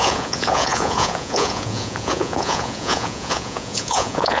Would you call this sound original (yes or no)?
no